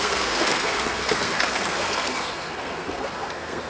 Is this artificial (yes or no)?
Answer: yes